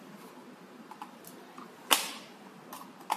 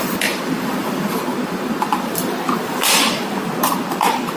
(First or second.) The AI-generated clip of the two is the second